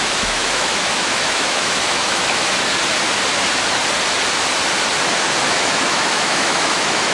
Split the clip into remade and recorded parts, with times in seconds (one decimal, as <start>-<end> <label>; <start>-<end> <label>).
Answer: 0.0-2.5 remade; 2.5-5.4 recorded; 5.4-7.1 remade